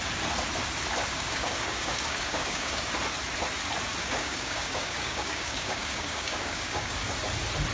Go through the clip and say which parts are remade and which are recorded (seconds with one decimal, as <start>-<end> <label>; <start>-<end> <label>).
0.0-1.0 recorded; 1.0-2.9 remade; 2.9-4.0 recorded; 4.0-7.0 remade; 7.0-7.7 recorded